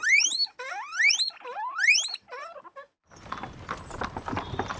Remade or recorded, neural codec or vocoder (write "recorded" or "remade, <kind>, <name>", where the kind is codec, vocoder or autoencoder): recorded